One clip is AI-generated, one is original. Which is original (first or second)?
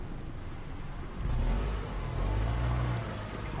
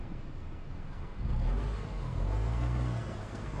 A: first